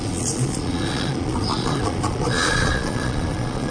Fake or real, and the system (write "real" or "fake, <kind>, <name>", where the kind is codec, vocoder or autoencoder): fake, vocoder, Vocos